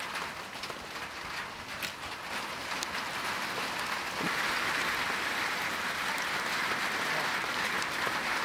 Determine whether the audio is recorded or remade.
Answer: recorded